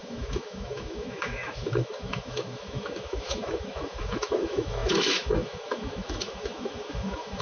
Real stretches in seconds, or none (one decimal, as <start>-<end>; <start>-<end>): none